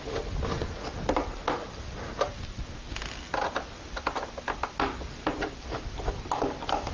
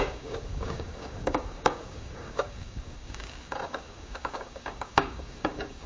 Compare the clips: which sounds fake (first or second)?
second